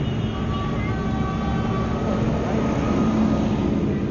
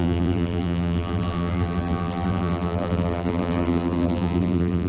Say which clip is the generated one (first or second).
second